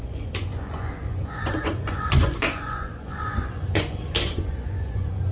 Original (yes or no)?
no